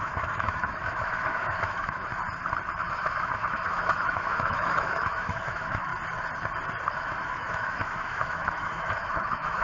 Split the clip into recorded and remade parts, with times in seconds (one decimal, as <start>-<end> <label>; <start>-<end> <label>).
0.0-2.1 remade; 2.1-2.8 recorded; 2.8-5.9 remade; 5.9-6.9 recorded; 6.9-9.6 remade